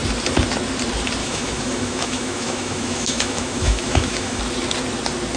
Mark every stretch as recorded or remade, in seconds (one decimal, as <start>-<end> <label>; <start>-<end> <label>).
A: 0.0-1.2 recorded; 1.2-4.4 remade; 4.4-5.4 recorded